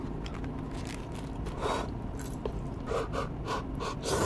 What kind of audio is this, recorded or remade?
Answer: recorded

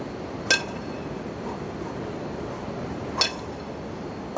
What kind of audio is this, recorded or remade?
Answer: recorded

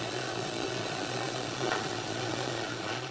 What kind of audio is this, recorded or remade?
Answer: remade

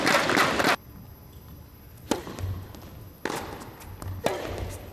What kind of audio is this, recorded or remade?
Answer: recorded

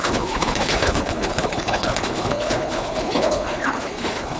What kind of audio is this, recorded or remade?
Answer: remade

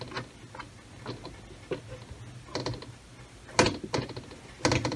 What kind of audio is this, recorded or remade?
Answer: recorded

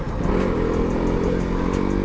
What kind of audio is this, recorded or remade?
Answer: recorded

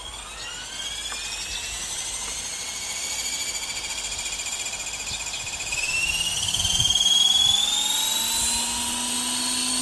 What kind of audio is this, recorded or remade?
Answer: recorded